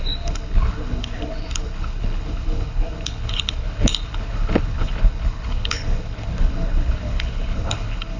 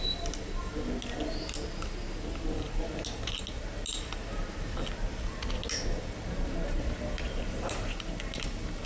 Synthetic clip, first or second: first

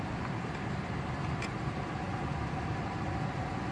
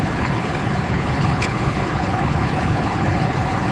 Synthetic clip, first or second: second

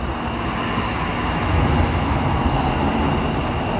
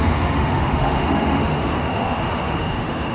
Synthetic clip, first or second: second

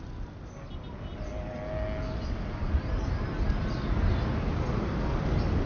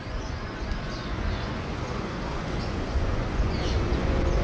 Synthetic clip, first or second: second